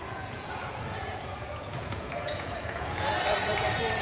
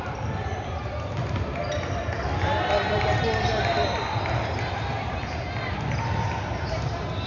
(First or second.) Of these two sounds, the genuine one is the second